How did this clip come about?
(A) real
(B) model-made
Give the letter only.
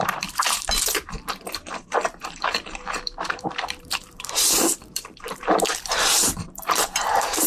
B